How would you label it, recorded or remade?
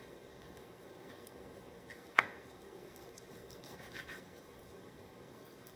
remade